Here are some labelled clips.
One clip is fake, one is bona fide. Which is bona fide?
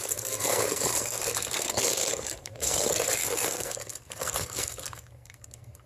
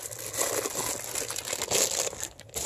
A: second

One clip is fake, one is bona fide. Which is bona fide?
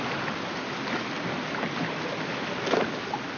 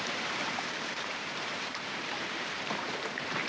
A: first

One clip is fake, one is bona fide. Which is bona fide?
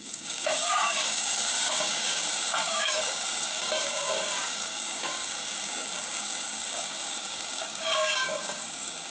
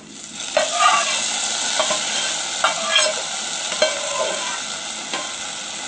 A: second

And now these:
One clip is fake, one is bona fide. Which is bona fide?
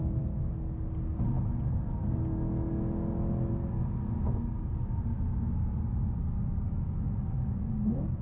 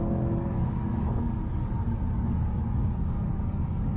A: first